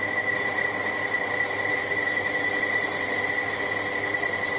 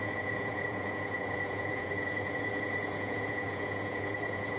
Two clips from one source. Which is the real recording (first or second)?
first